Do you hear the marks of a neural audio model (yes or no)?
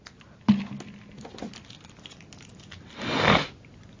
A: no